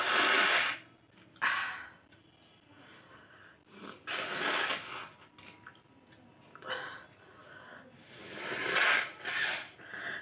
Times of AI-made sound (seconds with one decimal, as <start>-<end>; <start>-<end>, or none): none